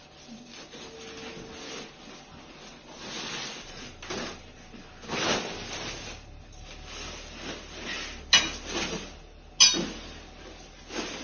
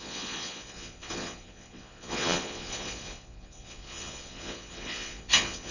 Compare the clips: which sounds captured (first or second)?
first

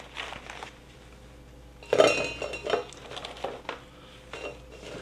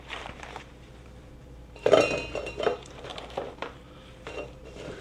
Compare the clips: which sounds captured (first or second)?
first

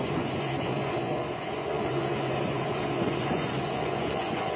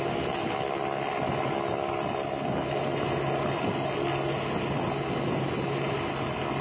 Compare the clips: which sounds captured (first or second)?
second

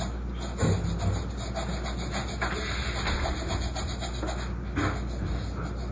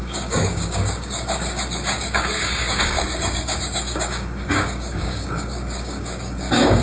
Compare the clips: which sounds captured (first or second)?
first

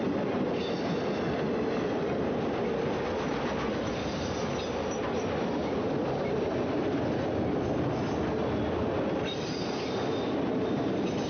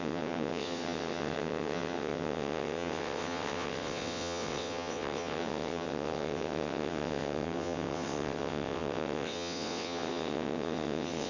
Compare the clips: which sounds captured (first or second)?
first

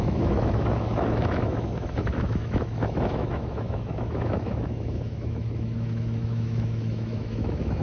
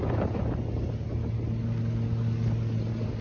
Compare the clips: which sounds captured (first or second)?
second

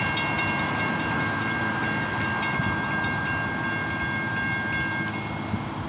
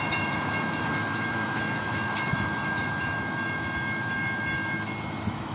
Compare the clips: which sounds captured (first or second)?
first